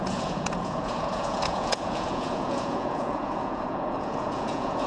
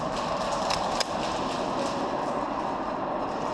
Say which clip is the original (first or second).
second